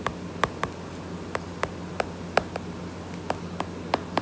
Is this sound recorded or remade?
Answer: recorded